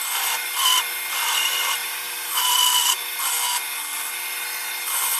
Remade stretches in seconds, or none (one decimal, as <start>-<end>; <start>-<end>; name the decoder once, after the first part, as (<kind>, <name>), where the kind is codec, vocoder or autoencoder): 1.8-2.4 (vocoder, BigVGAN v2)